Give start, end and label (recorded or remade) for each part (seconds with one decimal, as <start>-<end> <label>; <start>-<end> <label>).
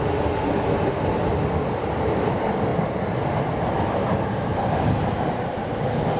0.0-6.2 recorded